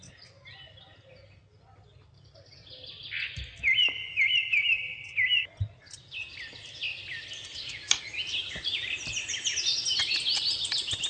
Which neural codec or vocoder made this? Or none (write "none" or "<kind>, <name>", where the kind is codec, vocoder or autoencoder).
none